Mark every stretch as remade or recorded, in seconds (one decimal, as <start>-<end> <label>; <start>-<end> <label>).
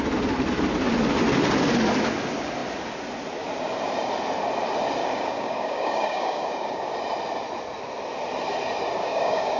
0.0-5.0 recorded; 5.0-6.9 remade; 6.9-9.0 recorded; 9.0-9.6 remade